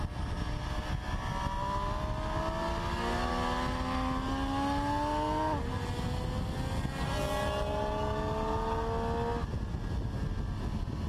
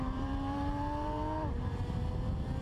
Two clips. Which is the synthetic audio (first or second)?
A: second